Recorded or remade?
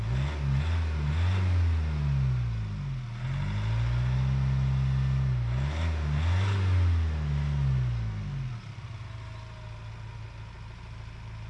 recorded